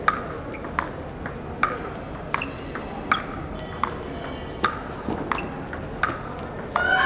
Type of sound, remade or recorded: recorded